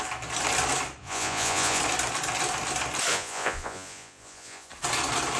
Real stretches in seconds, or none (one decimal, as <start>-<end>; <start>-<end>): 0.0-1.0; 1.8-3.1; 4.7-5.4